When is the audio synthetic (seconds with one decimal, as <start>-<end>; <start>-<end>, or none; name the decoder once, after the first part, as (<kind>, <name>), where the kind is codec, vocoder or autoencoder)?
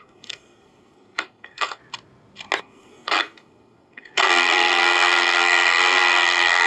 0.0-1.8 (codec, SNAC); 2.6-6.7